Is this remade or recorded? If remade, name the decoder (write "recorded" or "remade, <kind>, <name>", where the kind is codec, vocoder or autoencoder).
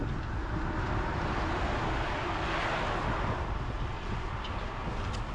recorded